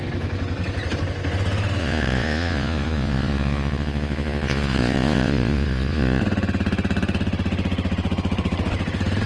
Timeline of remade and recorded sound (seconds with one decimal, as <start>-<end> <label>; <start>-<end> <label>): 0.0-1.8 recorded; 1.8-6.2 remade; 6.2-9.3 recorded